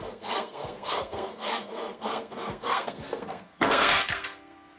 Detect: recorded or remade remade